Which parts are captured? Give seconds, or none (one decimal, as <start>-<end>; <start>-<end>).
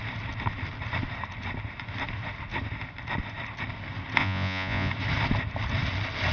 0.0-4.2; 4.9-6.3